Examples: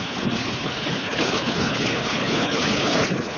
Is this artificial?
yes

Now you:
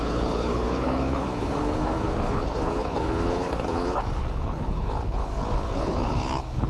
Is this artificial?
yes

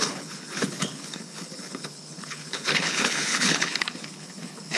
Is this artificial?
yes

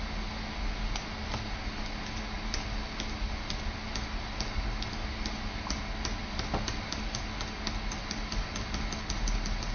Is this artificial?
no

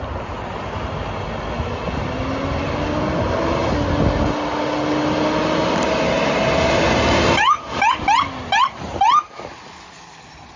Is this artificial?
no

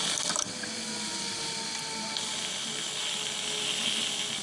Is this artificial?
no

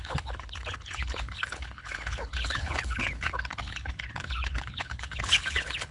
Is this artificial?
yes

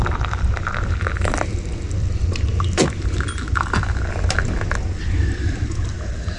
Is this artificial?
no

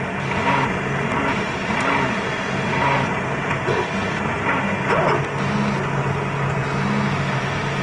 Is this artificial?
no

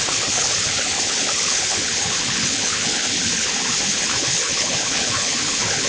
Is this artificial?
yes